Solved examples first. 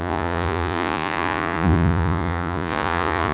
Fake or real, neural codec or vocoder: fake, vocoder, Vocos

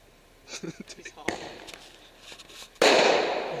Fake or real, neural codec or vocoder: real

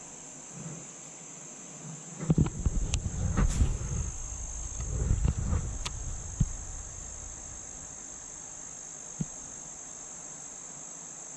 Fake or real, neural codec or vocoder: real